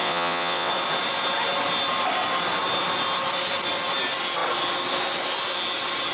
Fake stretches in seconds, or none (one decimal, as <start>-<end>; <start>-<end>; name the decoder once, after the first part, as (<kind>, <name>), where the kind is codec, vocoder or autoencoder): 0.0-0.7 (vocoder, WaveNeXt)